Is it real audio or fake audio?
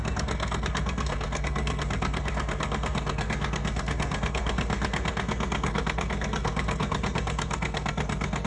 fake